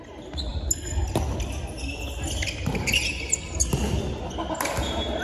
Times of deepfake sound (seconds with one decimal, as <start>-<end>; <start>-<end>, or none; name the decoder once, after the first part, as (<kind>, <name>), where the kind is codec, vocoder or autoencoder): none